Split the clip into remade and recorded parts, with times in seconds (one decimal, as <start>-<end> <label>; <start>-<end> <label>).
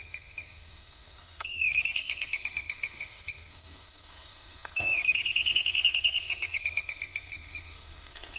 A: 0.0-8.4 remade